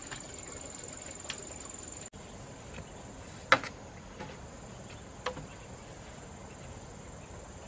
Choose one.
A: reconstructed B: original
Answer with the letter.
B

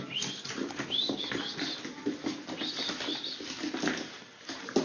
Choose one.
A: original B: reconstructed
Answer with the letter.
A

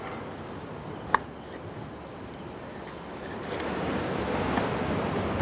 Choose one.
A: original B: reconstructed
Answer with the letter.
A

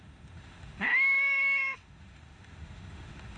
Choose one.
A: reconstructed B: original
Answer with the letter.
A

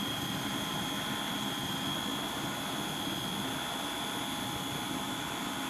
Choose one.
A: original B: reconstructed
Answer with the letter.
A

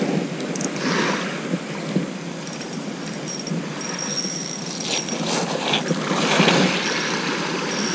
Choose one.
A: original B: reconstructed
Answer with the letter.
A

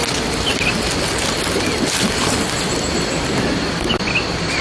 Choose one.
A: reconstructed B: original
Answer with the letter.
B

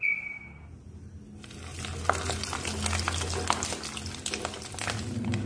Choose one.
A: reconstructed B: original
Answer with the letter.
B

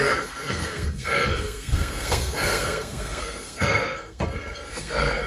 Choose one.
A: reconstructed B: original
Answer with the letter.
A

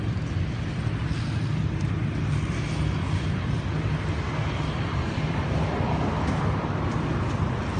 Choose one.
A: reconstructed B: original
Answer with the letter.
B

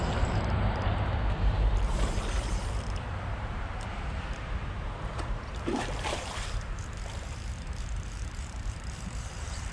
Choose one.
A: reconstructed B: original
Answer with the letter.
A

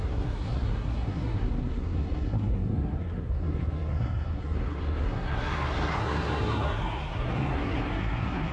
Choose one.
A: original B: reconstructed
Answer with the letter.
B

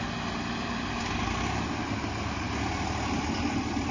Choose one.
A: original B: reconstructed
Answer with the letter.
A